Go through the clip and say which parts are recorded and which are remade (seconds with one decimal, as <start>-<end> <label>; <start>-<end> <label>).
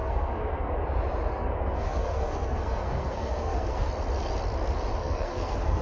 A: 0.0-0.7 remade; 0.7-1.3 recorded; 1.3-3.9 remade; 3.9-5.0 recorded; 5.0-5.8 remade